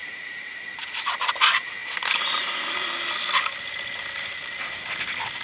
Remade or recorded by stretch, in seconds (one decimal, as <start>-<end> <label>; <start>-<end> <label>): 0.0-0.6 remade; 0.6-5.4 recorded